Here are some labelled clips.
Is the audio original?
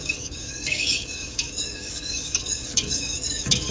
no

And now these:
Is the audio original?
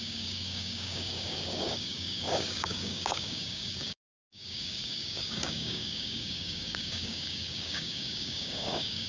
no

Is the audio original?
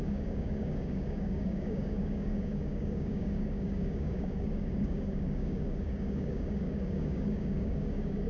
no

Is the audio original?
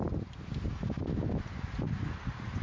yes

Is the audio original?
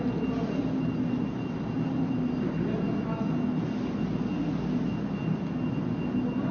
yes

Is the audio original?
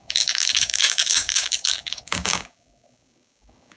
no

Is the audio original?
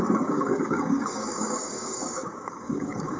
no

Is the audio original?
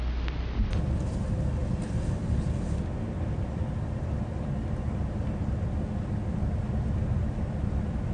yes